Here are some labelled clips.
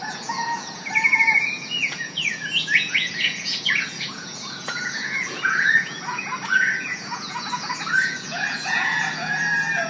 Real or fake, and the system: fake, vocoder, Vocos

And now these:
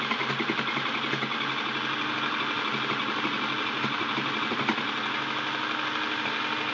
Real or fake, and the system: real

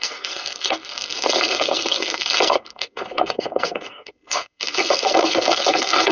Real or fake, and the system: fake, codec, SNAC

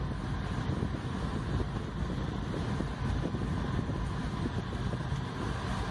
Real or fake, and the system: real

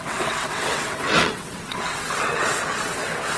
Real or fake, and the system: fake, vocoder, WaveNeXt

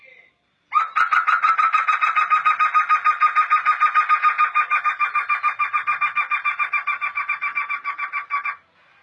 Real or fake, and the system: real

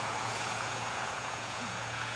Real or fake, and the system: fake, vocoder, Vocos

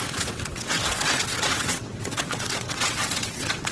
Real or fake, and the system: fake, vocoder, WaveNeXt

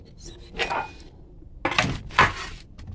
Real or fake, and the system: real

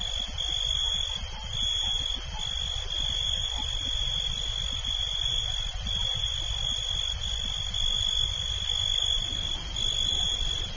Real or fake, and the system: real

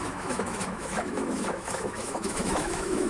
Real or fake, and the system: fake, autoencoder, DAC-VAE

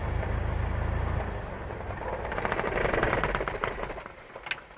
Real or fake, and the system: real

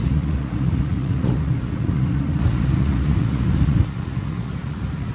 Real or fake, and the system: fake, vocoder, Vocos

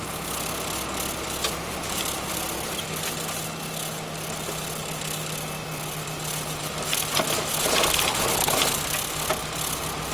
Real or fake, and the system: real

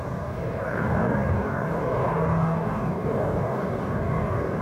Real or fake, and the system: fake, codec, DAC